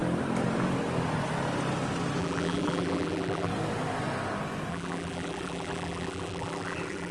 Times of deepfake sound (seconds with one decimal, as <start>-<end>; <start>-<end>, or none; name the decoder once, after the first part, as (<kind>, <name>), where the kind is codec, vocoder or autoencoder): 2.2-3.5 (vocoder, BigVGAN v2); 4.7-7.1